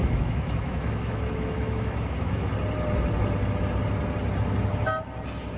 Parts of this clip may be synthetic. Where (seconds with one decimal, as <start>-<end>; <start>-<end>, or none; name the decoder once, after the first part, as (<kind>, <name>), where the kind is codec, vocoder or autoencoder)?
0.0-2.5 (autoencoder, DAC-VAE)